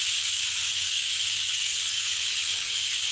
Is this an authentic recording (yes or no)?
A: no